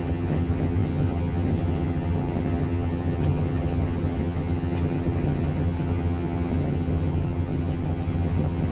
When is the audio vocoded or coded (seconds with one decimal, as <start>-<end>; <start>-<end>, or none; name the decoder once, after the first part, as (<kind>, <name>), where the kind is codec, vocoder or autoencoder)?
0.0-8.7 (vocoder, HiFi-GAN)